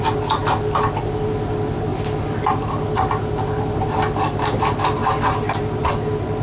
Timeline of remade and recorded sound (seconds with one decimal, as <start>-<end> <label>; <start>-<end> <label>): 0.0-0.4 recorded; 0.4-1.5 remade; 1.5-1.9 recorded; 1.9-4.6 remade; 4.6-5.0 recorded; 5.0-5.6 remade; 5.6-6.4 recorded